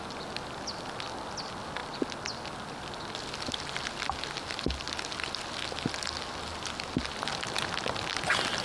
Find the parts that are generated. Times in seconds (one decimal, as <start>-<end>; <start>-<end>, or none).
none